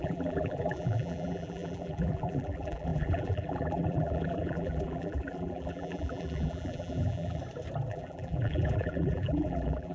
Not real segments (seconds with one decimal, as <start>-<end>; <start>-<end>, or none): 0.0-7.4; 7.9-9.9